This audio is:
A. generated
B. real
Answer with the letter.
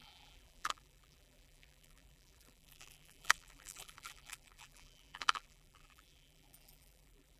A